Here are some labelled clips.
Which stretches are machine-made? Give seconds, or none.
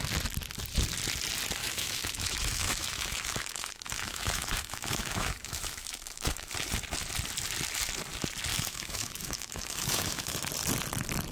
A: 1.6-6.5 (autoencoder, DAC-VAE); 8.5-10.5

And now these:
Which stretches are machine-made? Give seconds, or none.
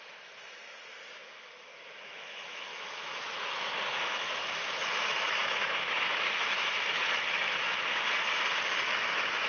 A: 0.0-9.5 (autoencoder, DAC-VAE)